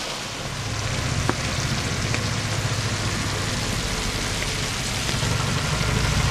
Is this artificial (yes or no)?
no